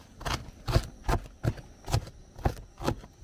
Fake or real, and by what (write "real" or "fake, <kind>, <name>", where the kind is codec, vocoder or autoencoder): real